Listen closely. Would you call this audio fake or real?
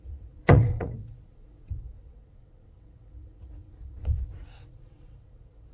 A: fake